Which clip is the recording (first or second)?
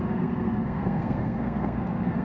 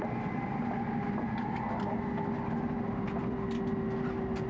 second